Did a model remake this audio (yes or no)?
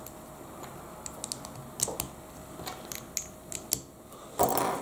no